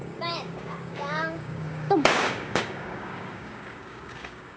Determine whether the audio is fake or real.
fake